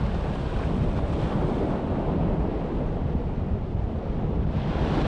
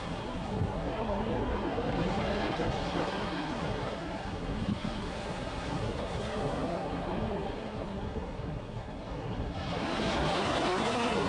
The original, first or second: first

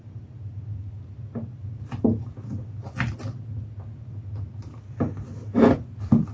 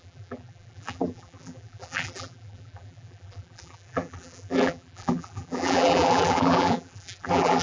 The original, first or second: first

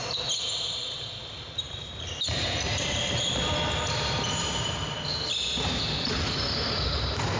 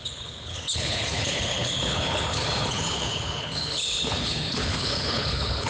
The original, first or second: first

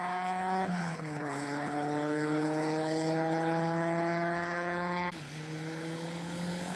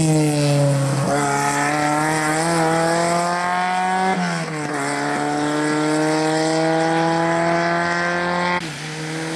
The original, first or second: second